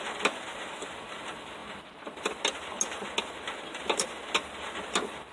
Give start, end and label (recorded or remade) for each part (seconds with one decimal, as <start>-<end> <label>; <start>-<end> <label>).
0.0-5.3 recorded